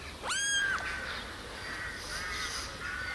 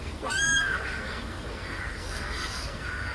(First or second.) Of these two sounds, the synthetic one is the second